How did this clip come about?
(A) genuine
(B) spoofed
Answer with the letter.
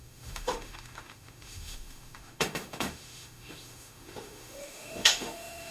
B